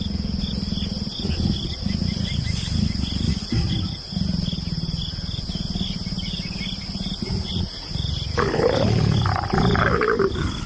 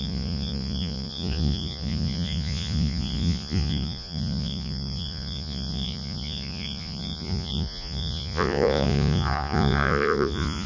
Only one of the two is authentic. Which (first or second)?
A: first